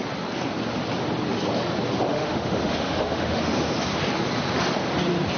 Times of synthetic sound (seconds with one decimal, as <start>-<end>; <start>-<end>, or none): 2.1-3.4